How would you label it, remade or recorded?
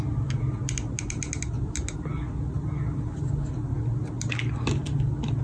recorded